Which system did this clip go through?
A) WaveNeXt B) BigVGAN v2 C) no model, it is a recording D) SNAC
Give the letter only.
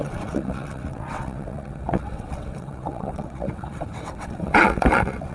A